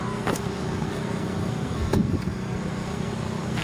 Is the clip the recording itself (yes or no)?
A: no